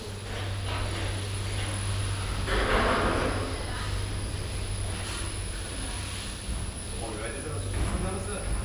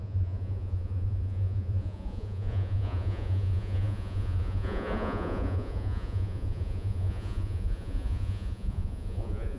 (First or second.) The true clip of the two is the first